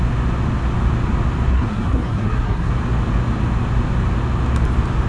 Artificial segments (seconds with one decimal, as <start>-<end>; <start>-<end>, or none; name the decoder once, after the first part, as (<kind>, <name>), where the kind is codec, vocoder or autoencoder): 1.5-2.7 (codec, SNAC)